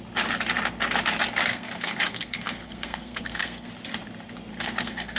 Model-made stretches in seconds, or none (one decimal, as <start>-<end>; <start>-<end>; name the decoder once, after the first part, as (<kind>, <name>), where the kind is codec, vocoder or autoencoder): 1.5-3.7 (codec, SNAC); 4.5-5.2